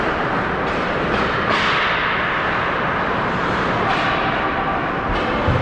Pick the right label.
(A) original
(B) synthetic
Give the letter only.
A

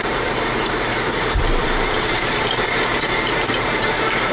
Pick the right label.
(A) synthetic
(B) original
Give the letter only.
A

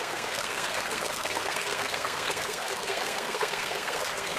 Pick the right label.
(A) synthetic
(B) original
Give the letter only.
A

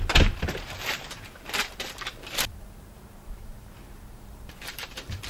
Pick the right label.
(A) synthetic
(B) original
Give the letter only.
A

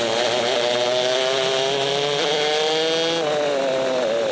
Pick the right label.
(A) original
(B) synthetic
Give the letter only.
A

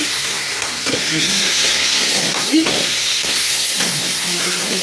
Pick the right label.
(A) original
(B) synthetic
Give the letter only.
B